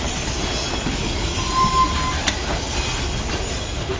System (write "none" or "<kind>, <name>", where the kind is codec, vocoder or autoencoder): none